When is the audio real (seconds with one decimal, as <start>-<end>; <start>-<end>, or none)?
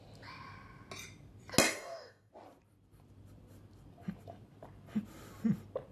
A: 0.0-1.7; 2.3-5.9